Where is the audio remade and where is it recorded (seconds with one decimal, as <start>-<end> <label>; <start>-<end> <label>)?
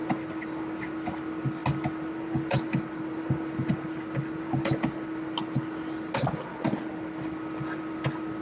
0.0-8.4 recorded